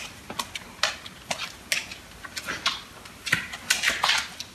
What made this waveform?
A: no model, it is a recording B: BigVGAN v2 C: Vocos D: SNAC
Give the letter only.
A